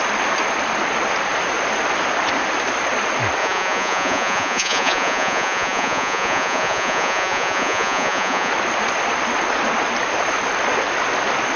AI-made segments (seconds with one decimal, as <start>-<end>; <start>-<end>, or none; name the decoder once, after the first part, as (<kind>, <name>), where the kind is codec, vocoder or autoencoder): 3.4-8.5 (vocoder, Vocos)

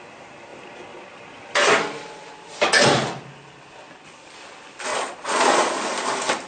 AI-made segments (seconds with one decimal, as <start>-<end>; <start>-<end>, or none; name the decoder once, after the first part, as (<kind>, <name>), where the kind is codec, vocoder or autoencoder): 4.9-5.7 (vocoder, Vocos)

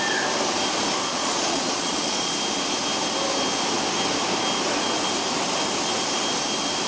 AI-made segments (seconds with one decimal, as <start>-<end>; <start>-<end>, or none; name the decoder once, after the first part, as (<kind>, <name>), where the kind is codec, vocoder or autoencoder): 1.1-2.3 (vocoder, Vocos)

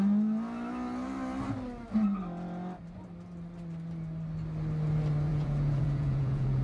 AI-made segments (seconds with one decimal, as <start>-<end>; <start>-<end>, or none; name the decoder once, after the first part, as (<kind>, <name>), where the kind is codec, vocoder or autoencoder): 5.3-6.6 (vocoder, Vocos)